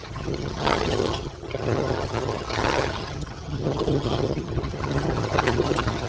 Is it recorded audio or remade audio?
remade